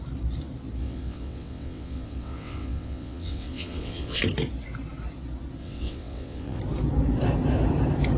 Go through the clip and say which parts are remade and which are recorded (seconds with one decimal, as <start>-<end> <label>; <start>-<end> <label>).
0.0-0.8 recorded; 0.8-4.2 remade; 4.2-5.6 recorded; 5.6-6.6 remade; 6.6-8.2 recorded